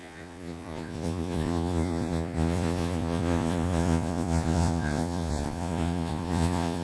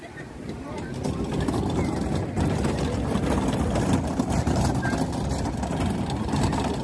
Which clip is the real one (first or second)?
second